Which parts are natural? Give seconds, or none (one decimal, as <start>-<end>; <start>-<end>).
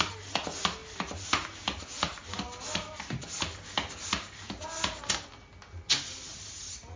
0.0-7.0